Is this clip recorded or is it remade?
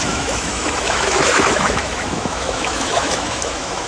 remade